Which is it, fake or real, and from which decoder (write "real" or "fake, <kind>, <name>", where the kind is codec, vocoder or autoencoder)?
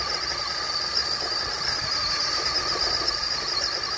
real